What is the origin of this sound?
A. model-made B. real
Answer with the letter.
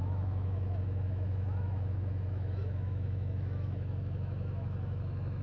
A